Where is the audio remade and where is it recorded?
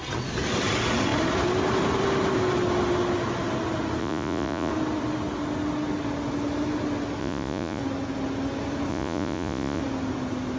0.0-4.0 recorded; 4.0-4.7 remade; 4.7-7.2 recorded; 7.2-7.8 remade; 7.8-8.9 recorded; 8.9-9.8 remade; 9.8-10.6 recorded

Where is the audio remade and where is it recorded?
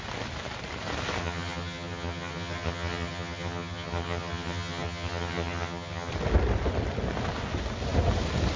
0.0-1.2 recorded; 1.2-6.1 remade; 6.1-8.6 recorded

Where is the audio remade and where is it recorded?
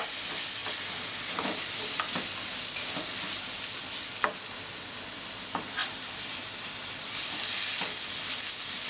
0.0-8.9 recorded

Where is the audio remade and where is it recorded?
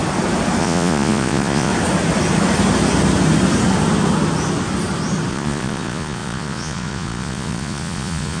0.0-0.6 recorded; 0.6-1.7 remade; 1.7-5.3 recorded; 5.3-8.4 remade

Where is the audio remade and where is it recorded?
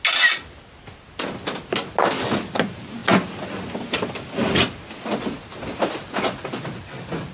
0.0-7.3 recorded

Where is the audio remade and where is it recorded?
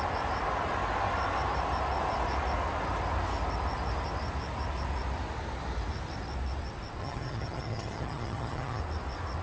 0.0-7.0 recorded; 7.0-8.8 remade; 8.8-9.4 recorded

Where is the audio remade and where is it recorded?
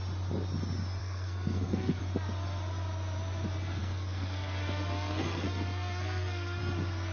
0.0-1.0 recorded; 1.0-2.0 remade; 2.0-3.8 recorded; 3.8-6.6 remade; 6.6-7.1 recorded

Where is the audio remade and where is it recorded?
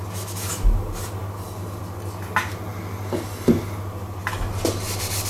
0.0-5.3 recorded